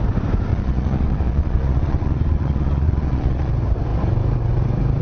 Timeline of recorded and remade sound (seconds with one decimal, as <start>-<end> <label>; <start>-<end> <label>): 0.0-0.5 recorded; 0.5-3.5 remade; 3.5-5.0 recorded